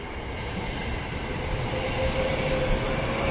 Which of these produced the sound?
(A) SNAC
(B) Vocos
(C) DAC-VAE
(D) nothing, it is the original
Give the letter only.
D